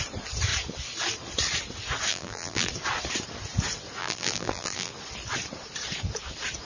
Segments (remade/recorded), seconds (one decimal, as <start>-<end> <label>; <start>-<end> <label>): 0.0-2.1 recorded; 2.1-2.7 remade; 2.7-4.0 recorded; 4.0-4.9 remade; 4.9-6.6 recorded